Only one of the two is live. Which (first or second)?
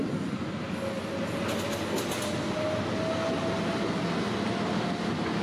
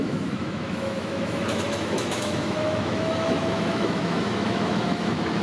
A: first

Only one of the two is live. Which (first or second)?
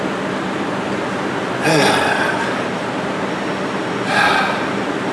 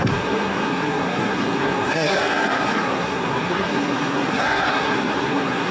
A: first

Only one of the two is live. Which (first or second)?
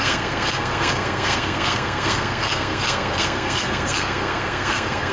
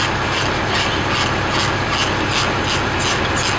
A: second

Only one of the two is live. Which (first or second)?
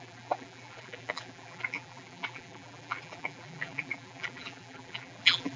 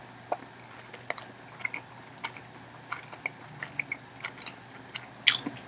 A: second